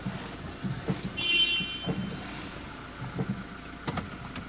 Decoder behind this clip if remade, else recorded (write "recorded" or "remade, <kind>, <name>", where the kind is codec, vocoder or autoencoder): recorded